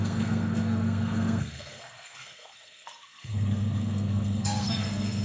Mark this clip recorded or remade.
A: remade